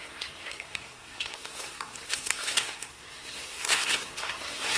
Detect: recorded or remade remade